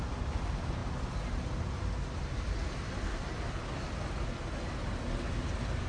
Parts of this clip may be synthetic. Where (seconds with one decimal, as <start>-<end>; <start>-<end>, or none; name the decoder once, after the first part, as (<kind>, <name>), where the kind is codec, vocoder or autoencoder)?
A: none